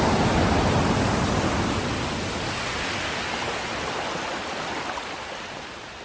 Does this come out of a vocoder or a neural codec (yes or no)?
no